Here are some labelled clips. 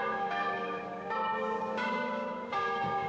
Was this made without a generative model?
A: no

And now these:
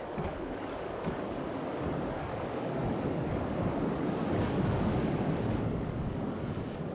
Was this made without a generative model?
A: no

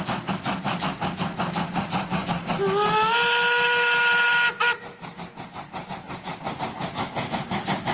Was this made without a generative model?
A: yes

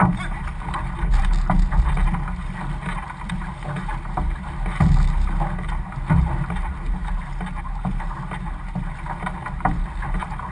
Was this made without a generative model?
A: yes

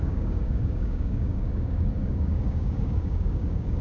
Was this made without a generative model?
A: no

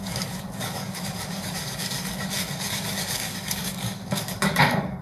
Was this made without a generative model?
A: no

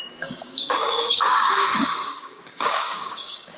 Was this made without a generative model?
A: no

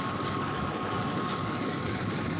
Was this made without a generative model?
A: no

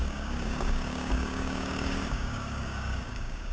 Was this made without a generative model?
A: no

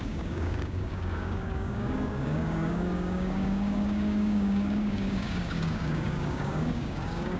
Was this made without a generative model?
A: no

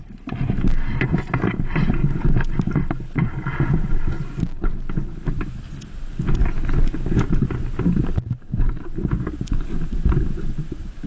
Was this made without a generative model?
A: yes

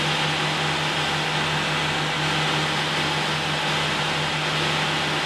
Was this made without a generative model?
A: yes